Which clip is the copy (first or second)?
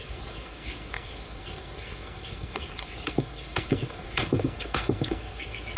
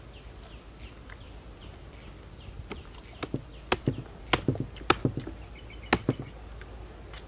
first